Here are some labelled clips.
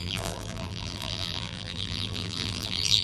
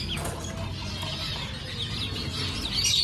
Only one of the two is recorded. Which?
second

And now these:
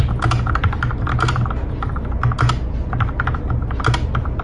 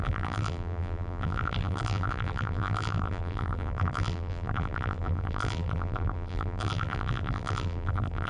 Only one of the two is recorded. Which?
first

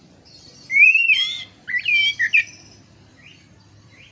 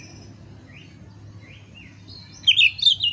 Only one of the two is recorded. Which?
second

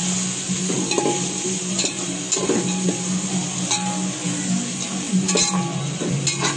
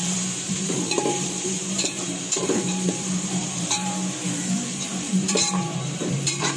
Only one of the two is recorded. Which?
first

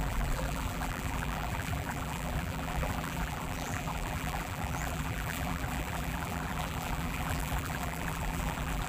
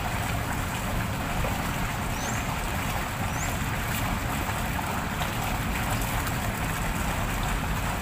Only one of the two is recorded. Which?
second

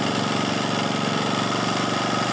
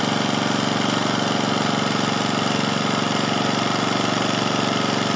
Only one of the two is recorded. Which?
second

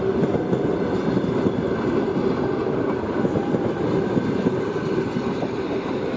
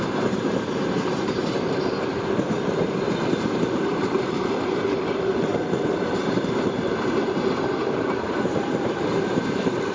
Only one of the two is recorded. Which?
first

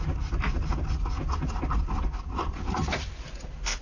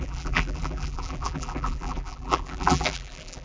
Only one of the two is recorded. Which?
first